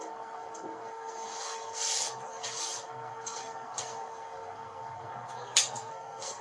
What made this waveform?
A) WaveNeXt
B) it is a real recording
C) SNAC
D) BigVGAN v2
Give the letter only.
C